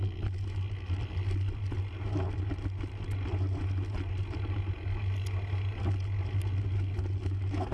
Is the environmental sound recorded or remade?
recorded